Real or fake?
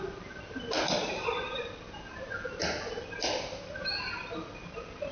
real